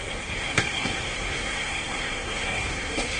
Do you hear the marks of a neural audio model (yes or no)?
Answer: yes